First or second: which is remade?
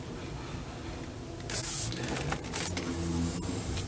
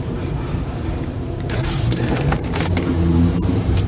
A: second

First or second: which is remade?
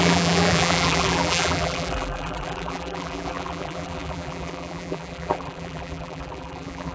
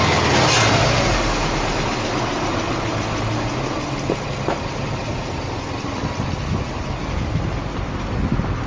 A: first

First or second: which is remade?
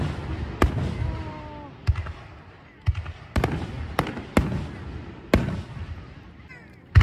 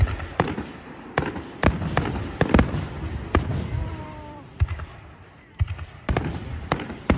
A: second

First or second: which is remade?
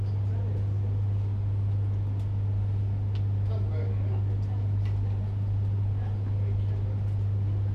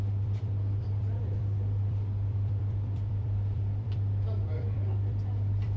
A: second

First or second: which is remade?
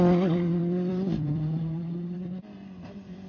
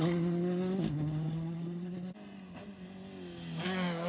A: first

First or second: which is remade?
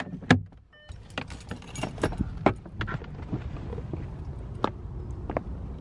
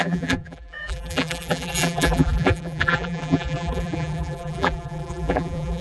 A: second